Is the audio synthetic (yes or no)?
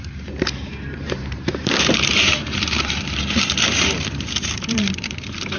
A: yes